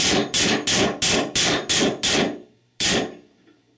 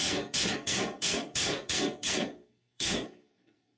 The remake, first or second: second